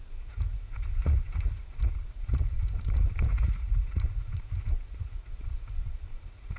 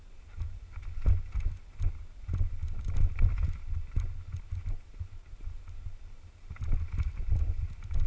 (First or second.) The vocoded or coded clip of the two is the first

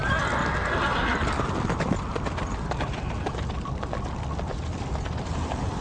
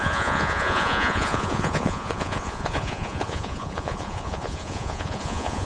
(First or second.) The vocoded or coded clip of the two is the second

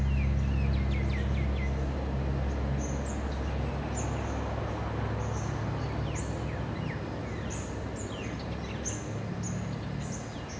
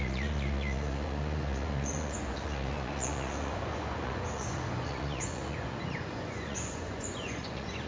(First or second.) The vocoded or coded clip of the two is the second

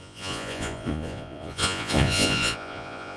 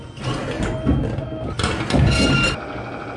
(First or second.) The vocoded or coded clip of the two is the first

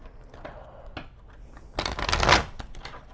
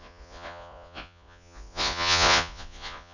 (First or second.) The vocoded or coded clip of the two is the second